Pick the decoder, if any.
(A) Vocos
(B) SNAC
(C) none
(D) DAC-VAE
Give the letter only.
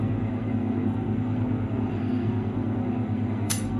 B